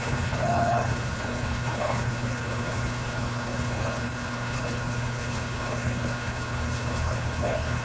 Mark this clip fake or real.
fake